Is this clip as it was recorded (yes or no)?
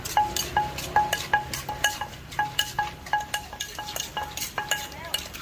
yes